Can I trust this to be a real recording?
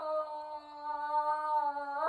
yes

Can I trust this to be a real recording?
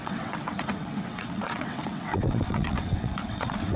no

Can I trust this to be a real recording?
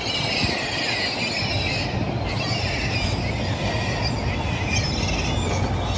yes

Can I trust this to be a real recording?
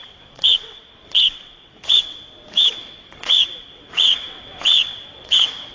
no